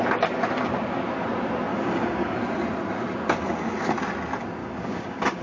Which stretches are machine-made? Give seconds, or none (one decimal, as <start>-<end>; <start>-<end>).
1.7-2.4; 4.6-5.4